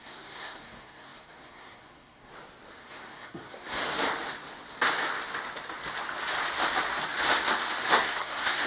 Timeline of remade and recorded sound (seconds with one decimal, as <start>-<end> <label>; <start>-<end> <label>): 0.0-2.3 remade; 2.3-2.8 recorded; 2.8-3.8 remade; 3.8-7.9 recorded; 7.9-8.7 remade